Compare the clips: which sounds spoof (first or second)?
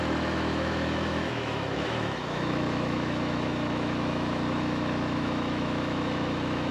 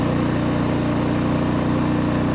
first